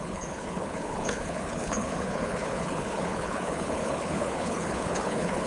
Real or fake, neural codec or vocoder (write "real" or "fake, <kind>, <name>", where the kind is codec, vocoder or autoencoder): fake, codec, HILCodec